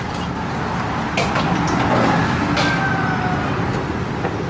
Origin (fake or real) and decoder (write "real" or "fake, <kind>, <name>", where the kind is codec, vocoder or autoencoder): real